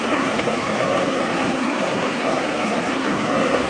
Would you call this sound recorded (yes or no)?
no